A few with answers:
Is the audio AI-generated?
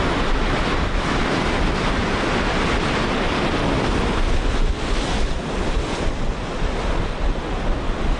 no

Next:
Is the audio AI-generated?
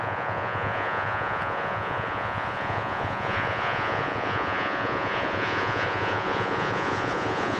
yes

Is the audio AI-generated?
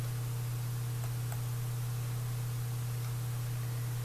no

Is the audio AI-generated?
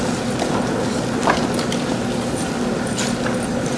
no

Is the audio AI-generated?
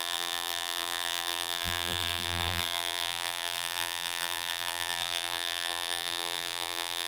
yes